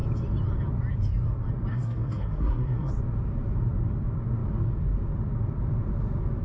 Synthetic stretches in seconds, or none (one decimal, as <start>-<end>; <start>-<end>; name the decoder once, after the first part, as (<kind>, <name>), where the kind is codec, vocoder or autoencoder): 1.7-2.9 (codec, SNAC)